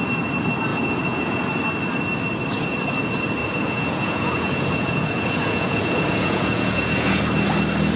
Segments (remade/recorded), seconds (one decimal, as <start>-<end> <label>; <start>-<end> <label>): 0.0-0.7 recorded; 0.7-1.4 remade; 1.4-3.4 recorded; 3.4-7.2 remade; 7.2-8.0 recorded